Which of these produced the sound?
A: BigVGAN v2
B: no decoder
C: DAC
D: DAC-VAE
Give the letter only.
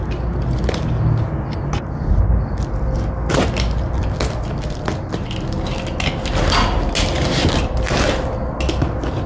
B